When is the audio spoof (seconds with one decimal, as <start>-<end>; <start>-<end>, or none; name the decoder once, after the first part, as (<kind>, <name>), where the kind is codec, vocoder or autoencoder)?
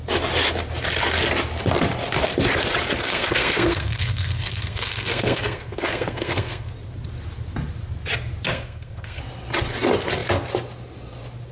3.1-6.7 (codec, SNAC); 8.5-9.2